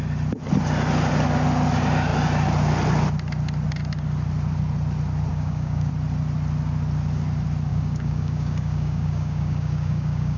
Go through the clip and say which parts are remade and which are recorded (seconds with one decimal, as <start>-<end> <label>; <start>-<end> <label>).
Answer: 0.0-5.3 recorded; 5.3-5.9 remade; 5.9-7.7 recorded; 7.7-10.4 remade